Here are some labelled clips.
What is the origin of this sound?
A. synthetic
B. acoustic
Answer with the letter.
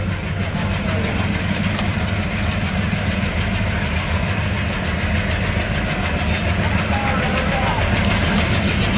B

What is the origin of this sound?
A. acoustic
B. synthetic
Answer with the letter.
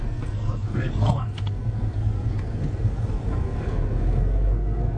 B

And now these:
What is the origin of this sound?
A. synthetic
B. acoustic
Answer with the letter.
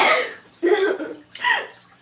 A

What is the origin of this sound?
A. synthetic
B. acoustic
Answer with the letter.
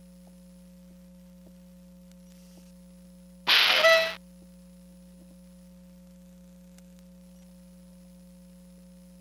B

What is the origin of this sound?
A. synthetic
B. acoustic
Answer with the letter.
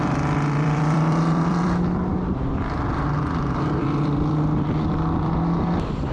A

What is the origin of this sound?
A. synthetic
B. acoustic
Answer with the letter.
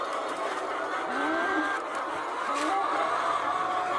B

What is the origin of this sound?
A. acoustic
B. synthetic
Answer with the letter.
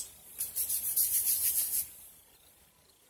B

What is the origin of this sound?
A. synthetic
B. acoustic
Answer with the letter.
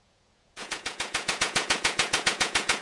A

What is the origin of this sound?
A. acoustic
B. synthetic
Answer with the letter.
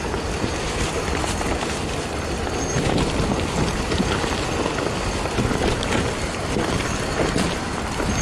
A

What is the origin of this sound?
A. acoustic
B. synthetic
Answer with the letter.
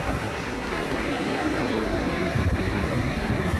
B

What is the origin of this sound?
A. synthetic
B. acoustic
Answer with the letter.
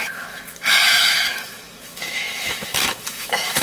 A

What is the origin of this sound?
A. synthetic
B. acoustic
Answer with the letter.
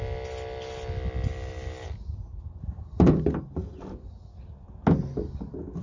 B